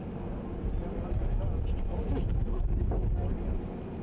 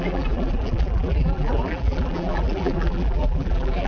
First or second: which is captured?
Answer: first